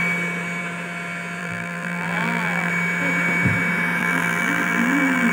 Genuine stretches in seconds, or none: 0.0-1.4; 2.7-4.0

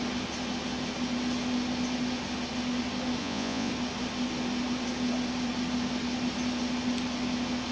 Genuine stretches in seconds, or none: 0.0-3.2; 3.7-7.7

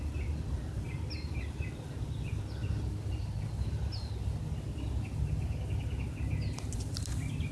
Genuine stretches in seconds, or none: 0.0-7.5